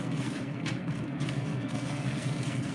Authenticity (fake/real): fake